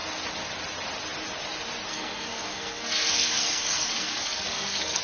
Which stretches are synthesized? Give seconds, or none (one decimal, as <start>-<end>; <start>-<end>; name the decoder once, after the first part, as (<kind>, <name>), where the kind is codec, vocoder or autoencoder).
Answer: 1.9-5.0 (codec, SNAC)